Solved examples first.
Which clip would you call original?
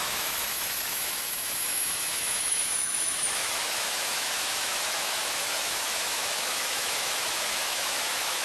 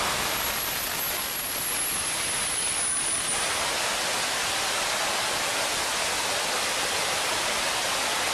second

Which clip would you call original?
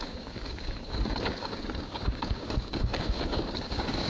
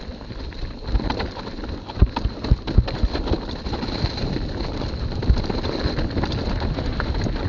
second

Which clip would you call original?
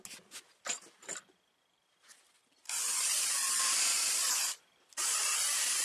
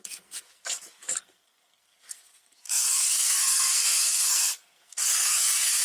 first